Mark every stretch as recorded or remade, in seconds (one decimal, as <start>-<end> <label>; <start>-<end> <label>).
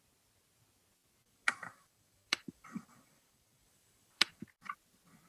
0.0-1.2 recorded; 1.2-4.4 remade; 4.4-5.3 recorded